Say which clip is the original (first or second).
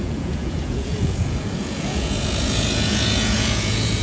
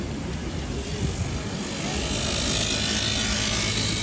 second